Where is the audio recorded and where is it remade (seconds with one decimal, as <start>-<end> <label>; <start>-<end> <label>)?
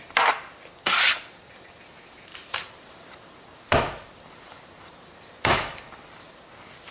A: 0.0-2.3 recorded; 2.3-6.0 remade; 6.0-6.9 recorded